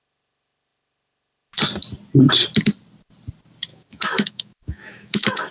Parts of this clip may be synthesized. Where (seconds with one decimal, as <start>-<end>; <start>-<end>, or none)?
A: 3.7-5.5